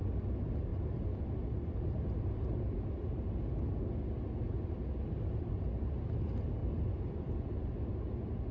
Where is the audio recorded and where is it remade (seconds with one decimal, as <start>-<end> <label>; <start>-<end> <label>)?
0.0-6.6 recorded; 6.6-8.0 remade; 8.0-8.5 recorded